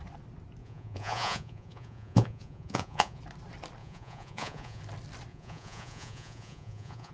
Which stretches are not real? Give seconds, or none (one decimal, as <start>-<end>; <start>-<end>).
0.6-3.2; 3.8-4.8; 5.3-7.1